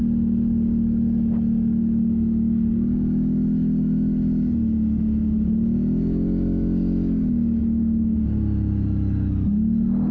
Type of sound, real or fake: real